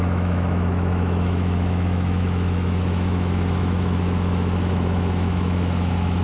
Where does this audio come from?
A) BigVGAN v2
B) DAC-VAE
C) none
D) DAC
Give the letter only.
B